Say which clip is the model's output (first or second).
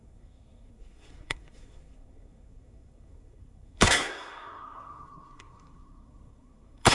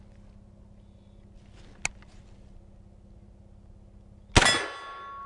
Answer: first